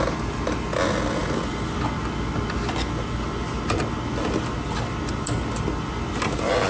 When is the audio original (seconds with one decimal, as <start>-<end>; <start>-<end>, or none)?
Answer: 0.0-6.7